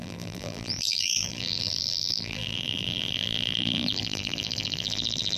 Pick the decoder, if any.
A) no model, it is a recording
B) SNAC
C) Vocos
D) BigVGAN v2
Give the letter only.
D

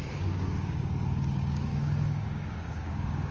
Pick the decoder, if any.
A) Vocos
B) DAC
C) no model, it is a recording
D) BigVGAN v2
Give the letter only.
B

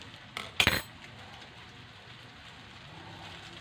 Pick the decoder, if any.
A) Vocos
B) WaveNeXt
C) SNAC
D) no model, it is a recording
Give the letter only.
D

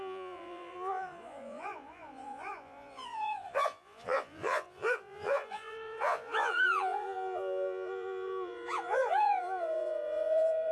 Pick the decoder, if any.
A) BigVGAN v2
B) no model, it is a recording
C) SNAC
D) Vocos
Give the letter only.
D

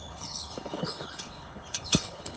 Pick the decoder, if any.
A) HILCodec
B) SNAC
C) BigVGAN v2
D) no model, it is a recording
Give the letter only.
A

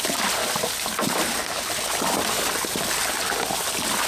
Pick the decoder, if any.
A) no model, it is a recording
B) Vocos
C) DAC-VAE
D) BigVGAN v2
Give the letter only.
A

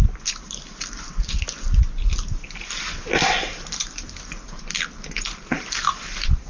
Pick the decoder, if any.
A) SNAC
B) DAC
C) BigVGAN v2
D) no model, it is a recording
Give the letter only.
D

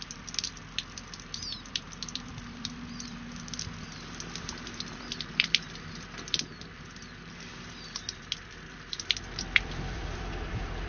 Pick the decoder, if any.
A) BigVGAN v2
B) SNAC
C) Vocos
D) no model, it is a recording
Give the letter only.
A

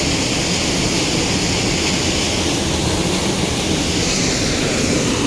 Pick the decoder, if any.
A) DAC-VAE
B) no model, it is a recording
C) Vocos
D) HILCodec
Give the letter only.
B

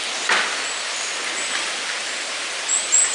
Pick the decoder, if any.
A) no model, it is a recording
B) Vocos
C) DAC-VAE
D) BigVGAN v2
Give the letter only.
A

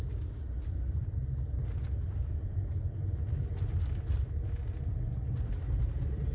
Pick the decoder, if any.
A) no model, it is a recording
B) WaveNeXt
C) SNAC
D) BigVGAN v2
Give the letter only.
A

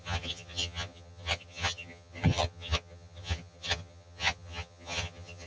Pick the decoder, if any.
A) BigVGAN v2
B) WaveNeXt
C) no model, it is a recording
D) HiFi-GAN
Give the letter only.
D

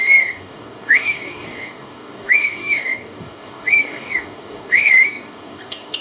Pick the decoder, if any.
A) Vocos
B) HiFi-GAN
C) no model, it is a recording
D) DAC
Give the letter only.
D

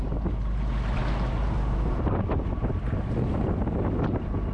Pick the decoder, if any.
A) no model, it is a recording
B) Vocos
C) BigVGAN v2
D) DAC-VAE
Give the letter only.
A